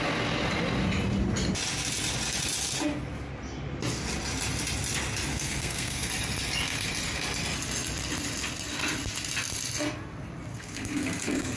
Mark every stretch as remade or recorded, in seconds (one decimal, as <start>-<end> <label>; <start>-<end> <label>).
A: 0.0-5.3 recorded; 5.3-6.1 remade; 6.1-10.5 recorded; 10.5-11.6 remade

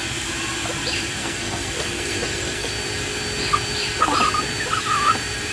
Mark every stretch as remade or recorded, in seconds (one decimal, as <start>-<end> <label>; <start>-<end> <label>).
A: 0.0-1.2 recorded; 1.2-2.7 remade; 2.7-5.5 recorded